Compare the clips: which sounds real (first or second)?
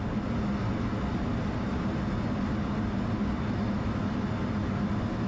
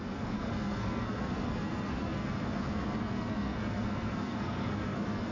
first